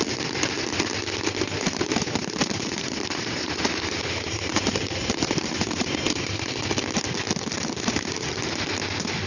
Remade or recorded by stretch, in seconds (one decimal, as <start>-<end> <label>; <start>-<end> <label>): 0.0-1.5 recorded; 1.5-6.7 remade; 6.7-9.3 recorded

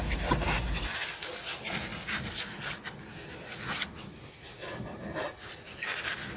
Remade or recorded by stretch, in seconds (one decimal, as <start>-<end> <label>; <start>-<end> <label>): 0.0-6.4 recorded

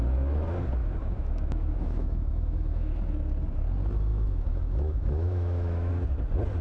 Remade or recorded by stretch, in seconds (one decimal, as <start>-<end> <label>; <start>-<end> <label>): 0.0-0.8 recorded; 0.8-3.0 remade; 3.0-4.1 recorded; 4.1-5.9 remade; 5.9-6.6 recorded

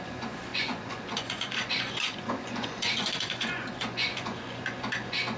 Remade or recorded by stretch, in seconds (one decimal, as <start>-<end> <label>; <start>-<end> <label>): 0.0-5.4 remade